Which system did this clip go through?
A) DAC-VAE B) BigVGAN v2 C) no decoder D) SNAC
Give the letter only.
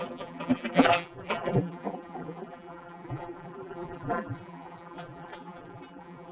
B